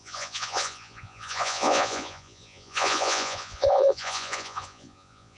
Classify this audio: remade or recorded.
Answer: remade